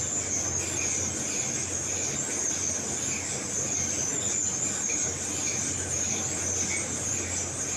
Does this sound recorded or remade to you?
recorded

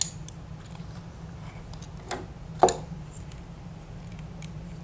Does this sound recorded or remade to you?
recorded